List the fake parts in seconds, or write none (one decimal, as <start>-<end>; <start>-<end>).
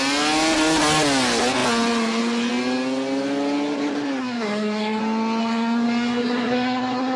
4.2-5.0; 5.4-7.2